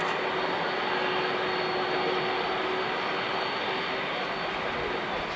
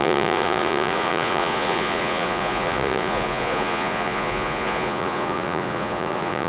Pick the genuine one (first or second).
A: first